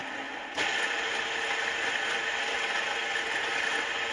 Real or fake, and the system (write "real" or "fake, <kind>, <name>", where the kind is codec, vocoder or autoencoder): real